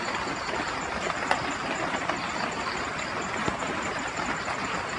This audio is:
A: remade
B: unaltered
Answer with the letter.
B